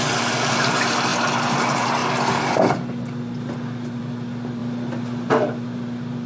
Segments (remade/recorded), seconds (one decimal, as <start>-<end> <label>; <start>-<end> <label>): 0.0-2.0 remade; 2.0-4.0 recorded; 4.0-4.6 remade; 4.6-5.3 recorded; 5.3-6.3 remade